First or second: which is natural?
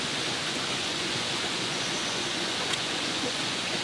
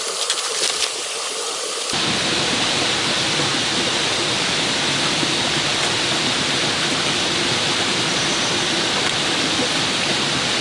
second